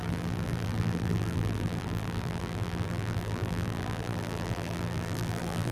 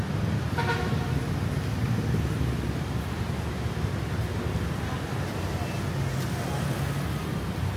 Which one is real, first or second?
second